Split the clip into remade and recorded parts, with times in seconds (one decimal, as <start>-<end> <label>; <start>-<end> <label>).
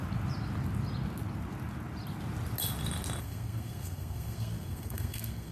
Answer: 0.0-3.2 recorded; 3.2-5.5 remade